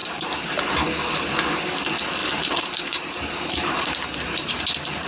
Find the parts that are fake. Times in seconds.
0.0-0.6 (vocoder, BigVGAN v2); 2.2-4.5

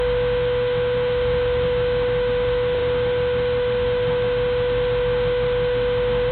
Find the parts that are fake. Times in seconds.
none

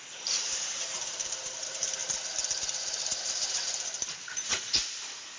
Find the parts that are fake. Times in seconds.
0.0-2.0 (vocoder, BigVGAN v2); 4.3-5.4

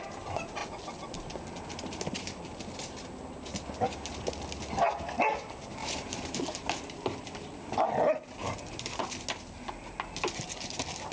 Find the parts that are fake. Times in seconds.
5.8-6.4 (vocoder, BigVGAN v2); 8.4-9.0

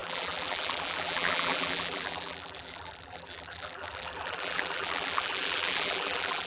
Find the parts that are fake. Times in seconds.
0.0-6.5 (vocoder, BigVGAN v2)

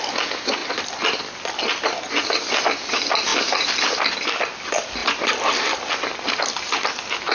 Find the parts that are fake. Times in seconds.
5.0-5.9 (vocoder, BigVGAN v2)

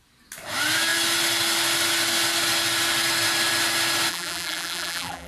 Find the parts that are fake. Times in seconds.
4.1-5.3 (vocoder, BigVGAN v2)

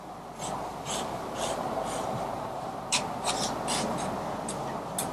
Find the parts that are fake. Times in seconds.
0.7-3.3 (vocoder, BigVGAN v2)